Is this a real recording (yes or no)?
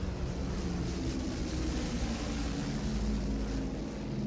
yes